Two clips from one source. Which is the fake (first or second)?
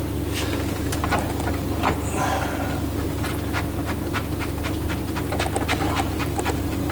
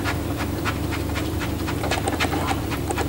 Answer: second